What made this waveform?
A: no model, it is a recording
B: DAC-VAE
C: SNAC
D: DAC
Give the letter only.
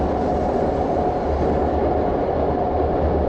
A